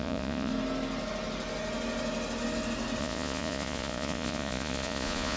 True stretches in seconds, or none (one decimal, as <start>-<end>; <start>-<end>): 0.5-3.0